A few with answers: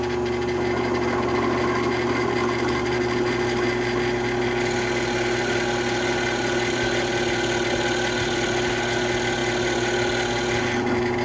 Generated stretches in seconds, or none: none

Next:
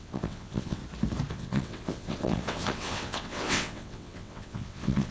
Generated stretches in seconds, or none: 0.0-0.8 (vocoder, WaveNeXt); 1.3-5.1

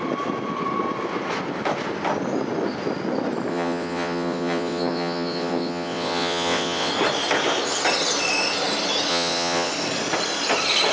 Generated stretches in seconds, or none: 3.5-6.9 (vocoder, WaveNeXt); 9.1-9.7

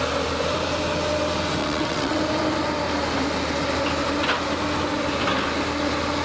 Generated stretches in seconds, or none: 1.6-2.2 (vocoder, WaveNeXt)

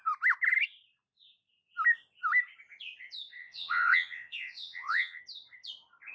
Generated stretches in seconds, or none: 3.4-5.2 (vocoder, WaveNeXt)